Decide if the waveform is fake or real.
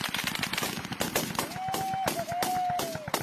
real